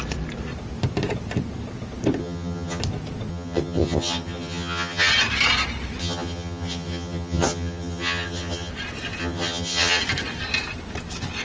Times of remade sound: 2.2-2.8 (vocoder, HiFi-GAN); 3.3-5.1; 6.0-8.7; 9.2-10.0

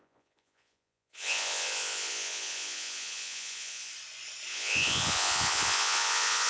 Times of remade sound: 0.0-3.9 (vocoder, Vocos); 4.5-6.5

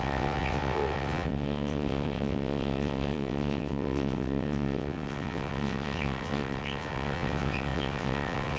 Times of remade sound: 0.0-8.6 (vocoder, WaveNeXt)

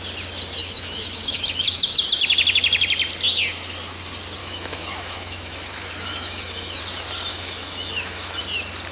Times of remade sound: 0.6-2.0 (autoencoder, DAC-VAE); 4.4-6.8; 7.3-8.4

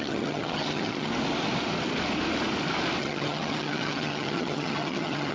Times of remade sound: 0.0-1.1 (vocoder, HiFi-GAN); 3.0-5.3

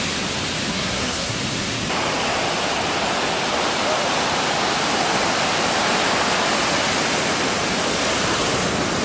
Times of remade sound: 0.7-1.4 (codec, SNAC)

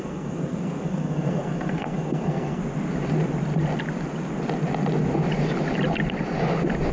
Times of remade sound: 0.0-2.6 (codec, SNAC)

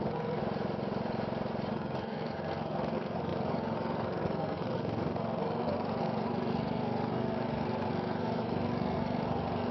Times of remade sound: 0.0-0.4 (codec, SNAC); 1.7-9.7